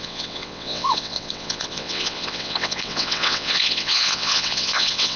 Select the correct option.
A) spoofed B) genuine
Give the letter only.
A